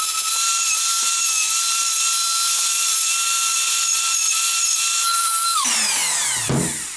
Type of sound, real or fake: fake